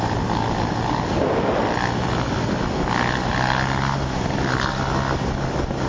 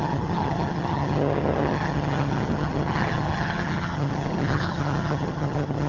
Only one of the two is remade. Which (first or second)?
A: second